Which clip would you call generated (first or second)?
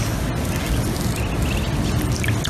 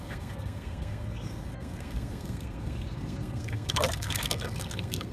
second